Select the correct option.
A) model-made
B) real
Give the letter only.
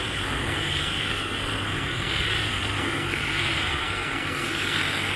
A